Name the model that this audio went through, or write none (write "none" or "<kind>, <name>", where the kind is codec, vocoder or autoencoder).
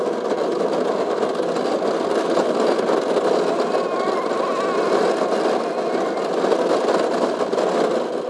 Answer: none